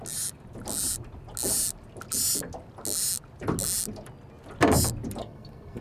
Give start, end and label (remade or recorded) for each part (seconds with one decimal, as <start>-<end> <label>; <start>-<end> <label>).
0.0-5.2 recorded; 5.2-5.8 remade